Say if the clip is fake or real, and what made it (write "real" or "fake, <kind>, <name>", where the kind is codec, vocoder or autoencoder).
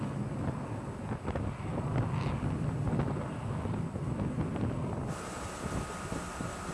real